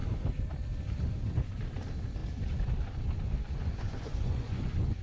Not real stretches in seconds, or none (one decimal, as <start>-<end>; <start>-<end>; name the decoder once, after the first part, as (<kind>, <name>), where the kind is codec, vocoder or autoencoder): 3.6-5.0 (vocoder, Vocos)